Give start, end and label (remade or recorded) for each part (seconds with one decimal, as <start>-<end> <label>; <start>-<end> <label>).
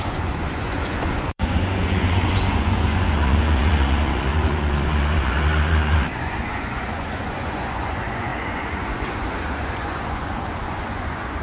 0.0-11.4 remade